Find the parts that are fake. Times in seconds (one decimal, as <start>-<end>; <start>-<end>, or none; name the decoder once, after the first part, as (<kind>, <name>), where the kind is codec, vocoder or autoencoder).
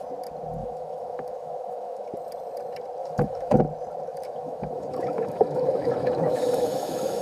0.6-2.1 (autoencoder, DAC-VAE); 3.0-3.6; 4.1-7.2